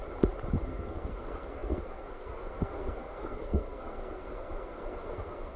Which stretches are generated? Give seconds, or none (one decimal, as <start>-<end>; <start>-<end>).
0.6-5.6